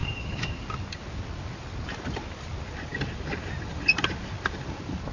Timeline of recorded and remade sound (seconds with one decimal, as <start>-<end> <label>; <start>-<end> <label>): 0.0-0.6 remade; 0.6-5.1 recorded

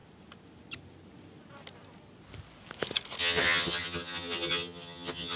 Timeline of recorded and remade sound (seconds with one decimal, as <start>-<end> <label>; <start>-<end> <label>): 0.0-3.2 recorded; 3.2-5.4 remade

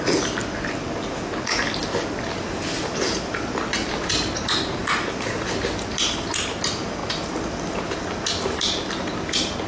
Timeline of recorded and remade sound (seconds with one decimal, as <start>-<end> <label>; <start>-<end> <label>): 0.0-0.4 recorded; 0.4-1.0 remade; 1.0-9.7 recorded

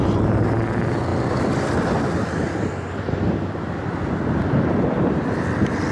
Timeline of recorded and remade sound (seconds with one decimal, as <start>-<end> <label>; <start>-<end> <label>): 0.0-5.9 recorded

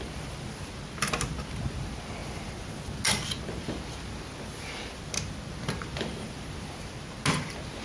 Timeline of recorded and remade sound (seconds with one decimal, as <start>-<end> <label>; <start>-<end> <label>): 0.0-7.8 recorded

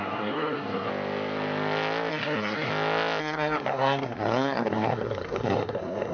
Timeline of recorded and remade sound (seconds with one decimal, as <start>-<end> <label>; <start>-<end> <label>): 0.0-0.9 remade; 0.9-2.1 recorded; 2.1-2.7 remade; 2.7-3.2 recorded; 3.2-6.1 remade

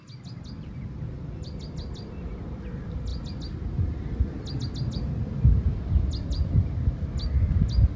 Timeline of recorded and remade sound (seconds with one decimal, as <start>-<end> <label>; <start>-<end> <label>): 0.0-8.0 recorded

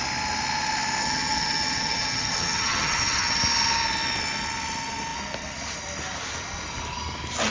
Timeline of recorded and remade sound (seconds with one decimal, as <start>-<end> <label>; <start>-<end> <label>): 0.0-1.0 recorded; 1.0-3.4 remade; 3.4-7.5 recorded